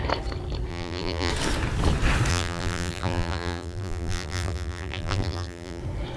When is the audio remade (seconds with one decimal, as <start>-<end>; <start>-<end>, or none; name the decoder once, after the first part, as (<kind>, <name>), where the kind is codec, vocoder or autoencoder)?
0.7-1.3 (vocoder, BigVGAN v2); 2.3-5.8

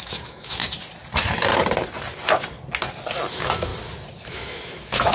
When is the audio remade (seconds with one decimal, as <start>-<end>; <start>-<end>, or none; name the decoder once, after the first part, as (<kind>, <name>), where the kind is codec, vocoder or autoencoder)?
0.0-0.6 (autoencoder, DAC-VAE); 3.3-3.7; 4.3-5.1

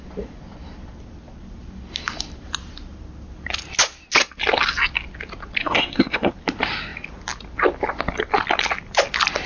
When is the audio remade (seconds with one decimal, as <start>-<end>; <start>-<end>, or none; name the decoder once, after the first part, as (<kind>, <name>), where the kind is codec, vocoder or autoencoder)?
5.6-6.3 (codec, SNAC)

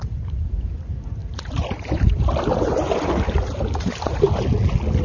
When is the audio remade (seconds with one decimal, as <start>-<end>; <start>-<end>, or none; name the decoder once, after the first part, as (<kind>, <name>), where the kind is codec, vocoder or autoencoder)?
0.0-0.7 (vocoder, BigVGAN v2); 1.2-4.2

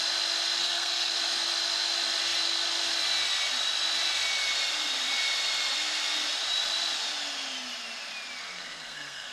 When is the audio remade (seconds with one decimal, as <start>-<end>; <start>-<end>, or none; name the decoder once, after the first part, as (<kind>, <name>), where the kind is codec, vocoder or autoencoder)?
0.6-1.1 (codec, SNAC); 8.4-9.3